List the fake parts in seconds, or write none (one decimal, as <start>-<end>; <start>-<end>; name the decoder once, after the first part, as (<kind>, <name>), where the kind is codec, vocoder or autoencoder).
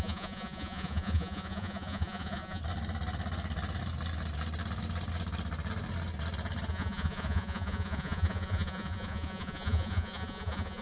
0.0-2.6 (vocoder, Vocos); 6.7-10.8